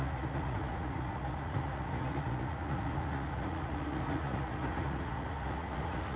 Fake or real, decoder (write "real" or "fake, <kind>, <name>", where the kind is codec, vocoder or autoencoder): fake, vocoder, Vocos